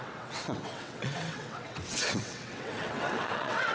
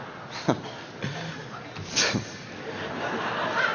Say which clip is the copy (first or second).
first